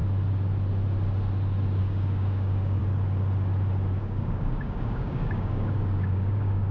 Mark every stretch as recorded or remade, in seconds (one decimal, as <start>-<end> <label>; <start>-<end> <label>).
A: 0.0-1.8 recorded; 1.8-2.8 remade; 2.8-4.0 recorded; 4.0-6.7 remade